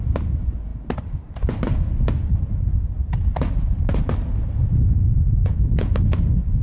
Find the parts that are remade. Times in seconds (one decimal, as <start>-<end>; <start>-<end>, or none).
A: 4.8-6.0